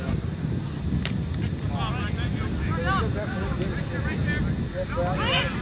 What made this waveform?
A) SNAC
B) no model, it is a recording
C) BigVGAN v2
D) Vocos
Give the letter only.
B